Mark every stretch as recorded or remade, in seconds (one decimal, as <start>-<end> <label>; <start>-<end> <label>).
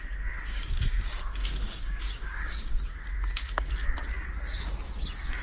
0.0-0.5 recorded; 0.5-3.7 remade; 3.7-5.4 recorded